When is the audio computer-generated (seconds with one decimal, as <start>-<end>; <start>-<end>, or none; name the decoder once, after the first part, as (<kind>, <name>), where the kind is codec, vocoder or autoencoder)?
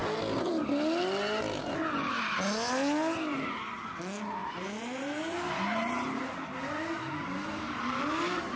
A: 1.6-2.2 (vocoder, BigVGAN v2); 4.4-8.0